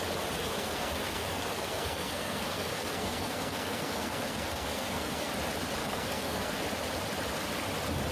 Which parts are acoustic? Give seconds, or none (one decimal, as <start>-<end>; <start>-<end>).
0.0-0.4; 5.3-5.8; 6.6-8.1